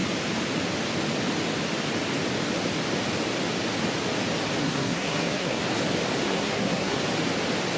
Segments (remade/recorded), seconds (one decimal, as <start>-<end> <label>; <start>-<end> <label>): 0.0-4.6 recorded; 4.6-5.6 remade; 5.6-6.2 recorded; 6.2-7.0 remade; 7.0-7.8 recorded